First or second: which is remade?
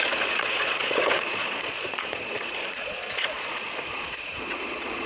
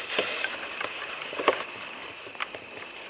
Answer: first